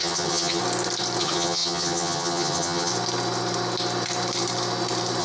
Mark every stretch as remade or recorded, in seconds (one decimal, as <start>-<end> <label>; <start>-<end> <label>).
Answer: 0.0-0.6 remade; 0.6-1.2 recorded; 1.2-2.9 remade; 2.9-5.2 recorded